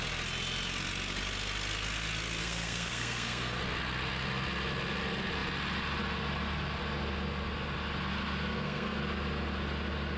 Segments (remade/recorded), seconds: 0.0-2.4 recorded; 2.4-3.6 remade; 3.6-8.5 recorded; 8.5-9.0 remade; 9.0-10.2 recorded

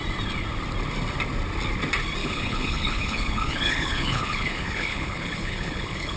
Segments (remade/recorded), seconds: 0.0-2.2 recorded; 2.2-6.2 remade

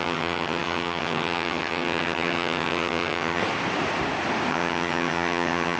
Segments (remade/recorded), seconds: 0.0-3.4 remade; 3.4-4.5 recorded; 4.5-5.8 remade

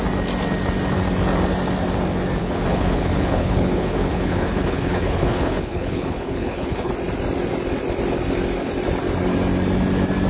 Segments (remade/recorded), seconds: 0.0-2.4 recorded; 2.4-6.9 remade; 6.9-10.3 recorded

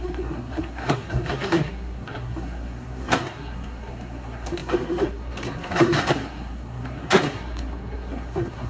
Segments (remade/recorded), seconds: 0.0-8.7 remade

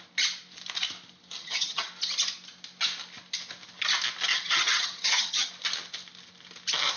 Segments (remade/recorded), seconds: 0.0-1.4 recorded; 1.4-1.9 remade; 1.9-4.3 recorded; 4.3-5.5 remade; 5.5-7.0 recorded